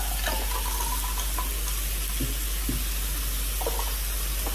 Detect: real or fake real